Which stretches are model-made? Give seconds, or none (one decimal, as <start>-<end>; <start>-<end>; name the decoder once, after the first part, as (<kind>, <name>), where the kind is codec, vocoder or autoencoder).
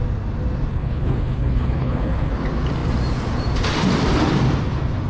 0.7-2.3 (codec, HILCodec)